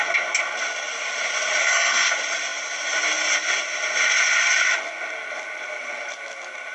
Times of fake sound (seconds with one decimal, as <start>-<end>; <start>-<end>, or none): 1.6-2.1